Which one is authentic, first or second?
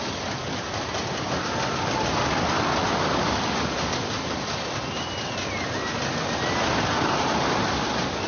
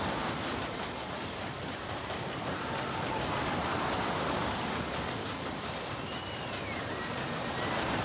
first